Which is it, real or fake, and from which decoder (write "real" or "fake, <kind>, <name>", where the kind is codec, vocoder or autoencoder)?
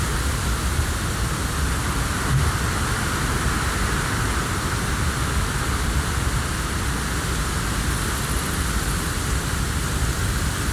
real